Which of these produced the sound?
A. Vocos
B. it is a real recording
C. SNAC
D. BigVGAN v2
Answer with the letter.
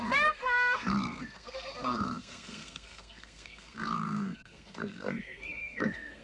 C